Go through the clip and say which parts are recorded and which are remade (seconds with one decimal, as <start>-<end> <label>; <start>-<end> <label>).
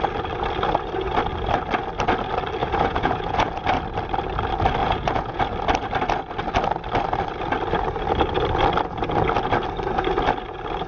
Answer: 0.0-2.6 recorded; 2.6-3.5 remade; 3.5-4.8 recorded; 4.8-5.4 remade; 5.4-10.9 recorded